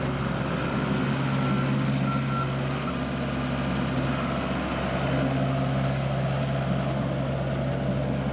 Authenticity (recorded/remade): recorded